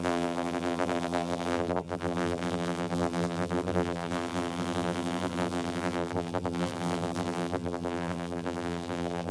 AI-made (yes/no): yes